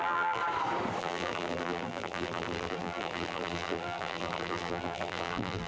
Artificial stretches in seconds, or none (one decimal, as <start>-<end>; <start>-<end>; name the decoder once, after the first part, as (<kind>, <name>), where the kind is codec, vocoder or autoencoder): 0.0-0.4 (vocoder, BigVGAN v2); 1.0-5.7